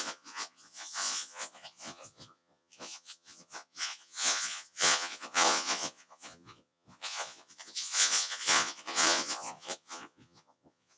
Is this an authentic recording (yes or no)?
no